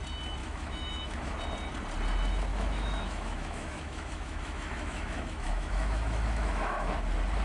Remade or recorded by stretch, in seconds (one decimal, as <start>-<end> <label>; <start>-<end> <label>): 0.0-0.4 recorded; 0.4-1.4 remade; 1.4-2.5 recorded; 2.5-6.9 remade; 6.9-7.4 recorded